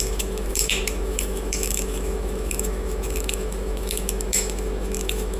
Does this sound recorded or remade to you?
remade